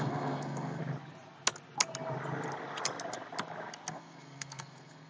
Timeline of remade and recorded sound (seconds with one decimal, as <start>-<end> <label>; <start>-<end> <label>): 0.0-0.8 remade; 0.8-3.9 recorded; 3.9-5.1 remade